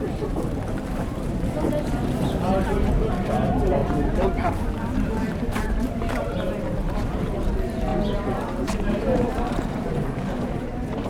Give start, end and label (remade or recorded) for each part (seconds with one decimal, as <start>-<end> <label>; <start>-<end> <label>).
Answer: 0.0-11.1 remade